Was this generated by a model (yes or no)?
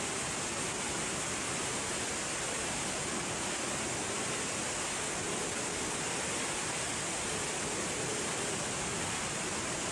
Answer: no